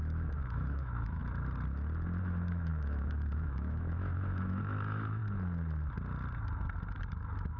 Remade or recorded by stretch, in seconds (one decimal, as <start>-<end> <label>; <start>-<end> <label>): 0.0-1.2 remade; 1.2-2.2 recorded; 2.2-5.2 remade; 5.2-7.6 recorded